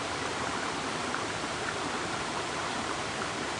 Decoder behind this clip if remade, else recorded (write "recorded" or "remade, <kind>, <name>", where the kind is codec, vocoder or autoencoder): remade, vocoder, BigVGAN v2